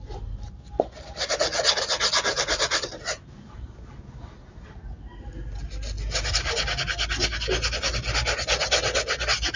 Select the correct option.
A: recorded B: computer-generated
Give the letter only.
A